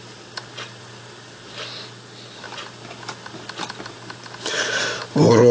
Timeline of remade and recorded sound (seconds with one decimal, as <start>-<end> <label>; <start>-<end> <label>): 0.0-5.5 recorded